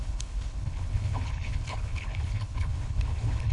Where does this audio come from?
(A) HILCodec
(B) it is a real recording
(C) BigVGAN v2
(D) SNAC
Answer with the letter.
A